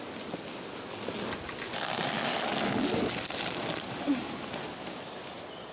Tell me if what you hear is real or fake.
real